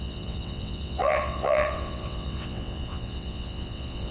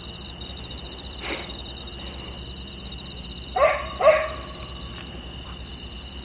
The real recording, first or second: second